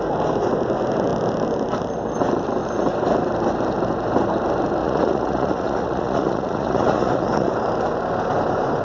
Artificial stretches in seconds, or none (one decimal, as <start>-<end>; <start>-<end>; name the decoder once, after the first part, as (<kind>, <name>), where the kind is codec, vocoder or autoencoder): 4.8-7.5 (vocoder, Vocos)